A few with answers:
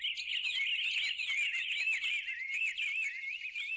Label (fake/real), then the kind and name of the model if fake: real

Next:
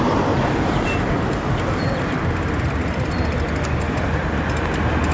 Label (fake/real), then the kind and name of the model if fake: real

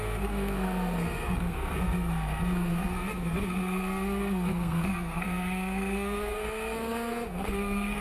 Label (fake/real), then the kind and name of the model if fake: fake, codec, SNAC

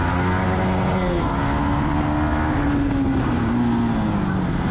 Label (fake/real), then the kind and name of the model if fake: real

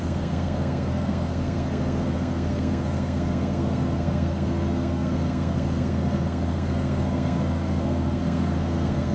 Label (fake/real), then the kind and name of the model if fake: fake, codec, SNAC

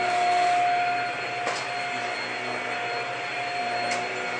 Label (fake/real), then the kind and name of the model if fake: real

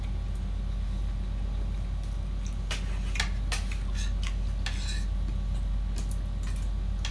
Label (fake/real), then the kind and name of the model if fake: real